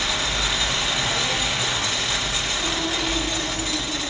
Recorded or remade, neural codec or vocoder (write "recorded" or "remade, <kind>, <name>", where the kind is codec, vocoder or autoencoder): recorded